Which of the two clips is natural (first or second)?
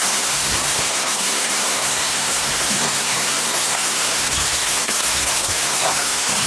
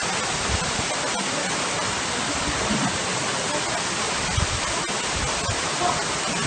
second